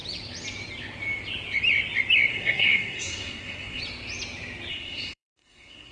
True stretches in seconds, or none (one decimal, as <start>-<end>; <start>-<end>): 0.0-2.3; 3.8-4.7